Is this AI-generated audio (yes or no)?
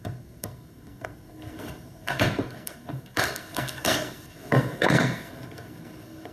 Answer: yes